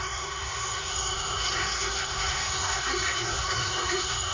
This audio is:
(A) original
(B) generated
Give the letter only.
B